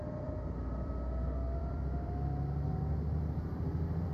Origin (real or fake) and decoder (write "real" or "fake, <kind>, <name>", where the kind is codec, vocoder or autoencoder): fake, vocoder, BigVGAN v2